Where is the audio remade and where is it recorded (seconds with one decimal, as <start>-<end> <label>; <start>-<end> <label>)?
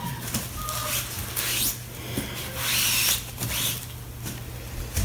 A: 0.0-5.0 recorded